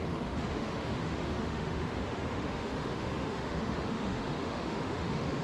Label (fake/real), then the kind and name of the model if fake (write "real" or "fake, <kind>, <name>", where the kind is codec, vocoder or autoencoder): fake, autoencoder, DAC-VAE